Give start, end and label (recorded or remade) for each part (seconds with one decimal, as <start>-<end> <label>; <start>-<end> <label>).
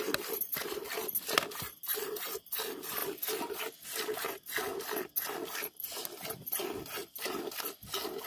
0.0-8.3 recorded